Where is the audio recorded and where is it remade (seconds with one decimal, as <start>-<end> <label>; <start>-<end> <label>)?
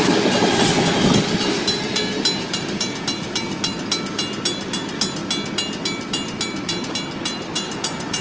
0.0-8.2 recorded